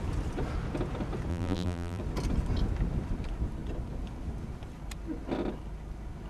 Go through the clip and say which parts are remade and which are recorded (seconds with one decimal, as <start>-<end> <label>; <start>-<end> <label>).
0.0-1.3 recorded; 1.3-2.0 remade; 2.0-6.3 recorded